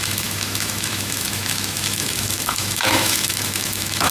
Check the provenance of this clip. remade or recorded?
remade